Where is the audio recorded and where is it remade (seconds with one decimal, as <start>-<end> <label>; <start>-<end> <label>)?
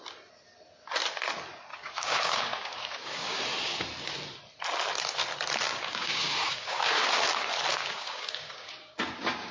0.0-1.7 recorded; 1.7-3.4 remade; 3.4-5.7 recorded; 5.7-7.1 remade; 7.1-7.7 recorded; 7.7-9.5 remade